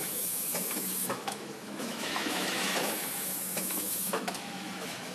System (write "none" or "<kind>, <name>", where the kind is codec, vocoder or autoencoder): autoencoder, DAC-VAE